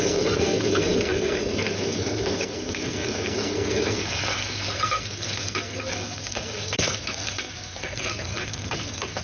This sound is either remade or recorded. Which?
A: remade